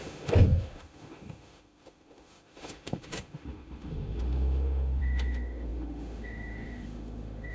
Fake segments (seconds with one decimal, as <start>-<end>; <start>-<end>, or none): 0.0-7.5